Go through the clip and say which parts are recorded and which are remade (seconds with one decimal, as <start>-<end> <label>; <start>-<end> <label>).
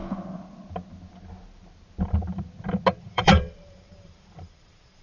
0.0-3.0 recorded; 3.0-5.0 remade